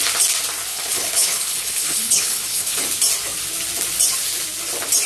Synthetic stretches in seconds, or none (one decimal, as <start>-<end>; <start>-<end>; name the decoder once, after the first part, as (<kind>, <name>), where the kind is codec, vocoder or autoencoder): 0.7-2.8 (codec, HILCodec)